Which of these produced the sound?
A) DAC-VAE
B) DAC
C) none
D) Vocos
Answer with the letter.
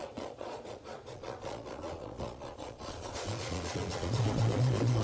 D